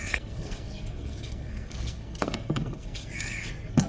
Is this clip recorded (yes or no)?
no